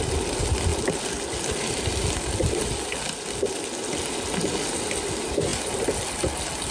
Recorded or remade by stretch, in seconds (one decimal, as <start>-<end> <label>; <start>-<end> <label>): 0.0-6.7 recorded